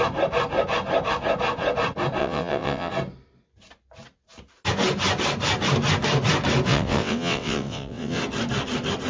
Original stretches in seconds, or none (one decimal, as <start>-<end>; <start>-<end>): 0.0-2.2; 2.9-6.7; 8.2-9.1